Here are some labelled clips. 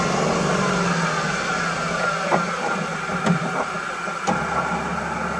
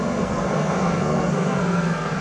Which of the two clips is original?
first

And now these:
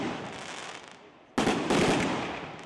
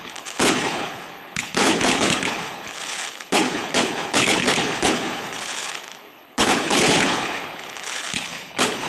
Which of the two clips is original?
first